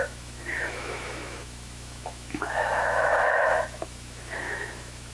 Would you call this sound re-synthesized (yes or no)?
yes